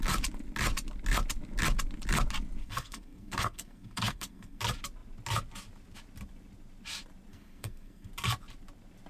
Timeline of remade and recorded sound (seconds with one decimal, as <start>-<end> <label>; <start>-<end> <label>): 0.0-2.6 recorded; 2.6-4.6 remade; 4.6-7.3 recorded; 7.3-8.1 remade; 8.1-9.1 recorded